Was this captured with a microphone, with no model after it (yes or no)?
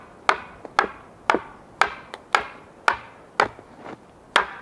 yes